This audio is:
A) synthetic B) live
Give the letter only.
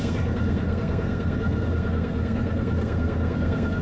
A